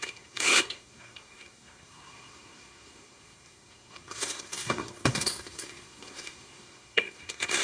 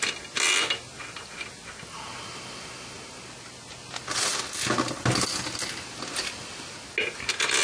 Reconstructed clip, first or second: first